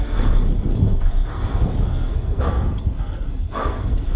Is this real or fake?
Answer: fake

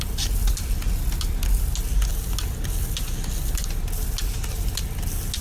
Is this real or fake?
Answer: real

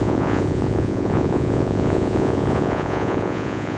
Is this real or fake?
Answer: fake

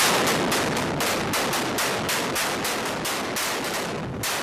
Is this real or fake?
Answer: real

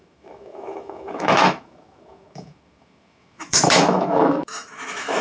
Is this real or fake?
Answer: fake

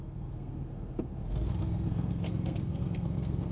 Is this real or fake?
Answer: fake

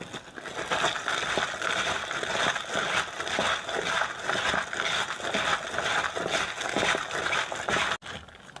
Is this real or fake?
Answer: real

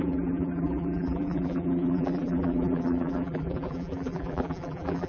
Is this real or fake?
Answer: fake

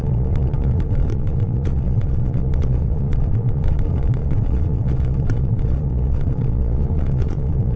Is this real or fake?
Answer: fake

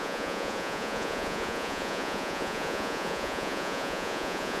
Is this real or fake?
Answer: fake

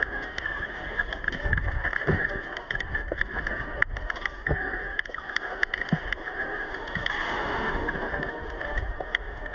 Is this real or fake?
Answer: fake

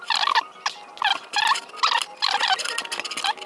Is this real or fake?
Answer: real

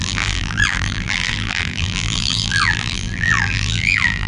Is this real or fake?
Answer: fake